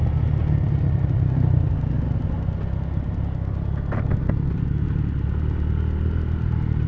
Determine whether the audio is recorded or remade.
recorded